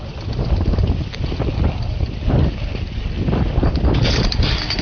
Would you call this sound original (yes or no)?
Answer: yes